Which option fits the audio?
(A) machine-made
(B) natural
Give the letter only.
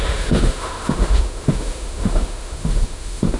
A